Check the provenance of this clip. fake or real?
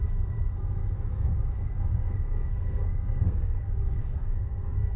fake